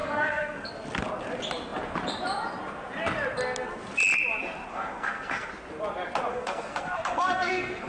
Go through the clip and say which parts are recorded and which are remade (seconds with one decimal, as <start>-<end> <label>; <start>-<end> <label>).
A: 0.0-0.7 remade; 0.7-4.7 recorded; 4.7-5.5 remade; 5.5-6.3 recorded; 6.3-7.9 remade